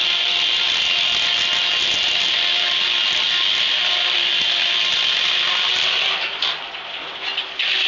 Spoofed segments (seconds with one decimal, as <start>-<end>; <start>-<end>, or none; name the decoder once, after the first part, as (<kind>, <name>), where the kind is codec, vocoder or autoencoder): none